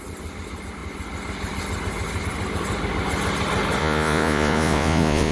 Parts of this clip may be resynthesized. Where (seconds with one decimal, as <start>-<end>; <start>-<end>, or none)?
3.8-5.3

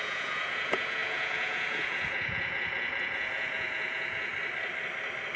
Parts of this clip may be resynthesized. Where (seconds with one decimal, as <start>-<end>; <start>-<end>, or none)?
0.0-4.3

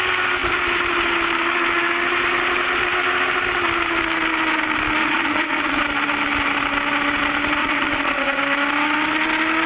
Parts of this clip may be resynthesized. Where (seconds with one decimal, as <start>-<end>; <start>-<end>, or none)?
5.0-5.8; 7.6-8.4

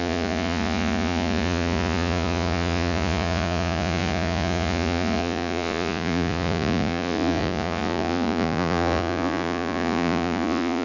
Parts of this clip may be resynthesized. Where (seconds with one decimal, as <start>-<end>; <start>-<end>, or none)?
0.0-10.8

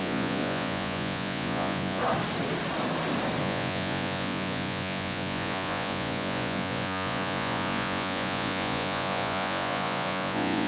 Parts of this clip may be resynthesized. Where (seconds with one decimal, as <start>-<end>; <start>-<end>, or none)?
0.0-2.0; 3.4-10.7

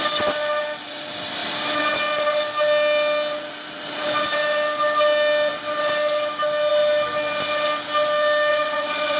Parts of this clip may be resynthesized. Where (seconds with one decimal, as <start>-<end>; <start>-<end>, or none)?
8.5-9.2